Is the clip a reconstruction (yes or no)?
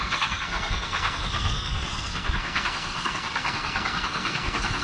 yes